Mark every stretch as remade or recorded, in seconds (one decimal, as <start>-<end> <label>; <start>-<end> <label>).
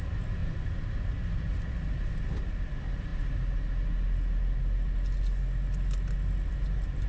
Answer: 0.0-0.4 recorded; 0.4-2.1 remade; 2.1-7.1 recorded